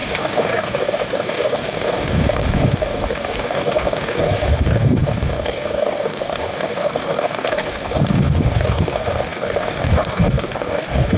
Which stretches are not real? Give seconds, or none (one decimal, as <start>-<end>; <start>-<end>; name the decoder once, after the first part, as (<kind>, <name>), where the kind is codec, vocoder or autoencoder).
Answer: 0.0-11.2 (codec, DAC)